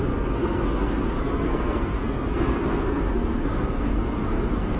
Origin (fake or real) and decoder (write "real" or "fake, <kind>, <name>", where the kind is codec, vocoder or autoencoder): fake, codec, SNAC